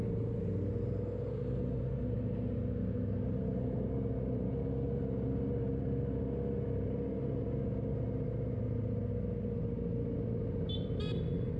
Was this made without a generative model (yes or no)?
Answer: yes